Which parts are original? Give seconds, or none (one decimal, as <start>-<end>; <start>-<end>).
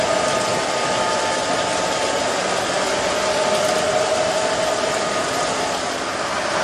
0.0-6.6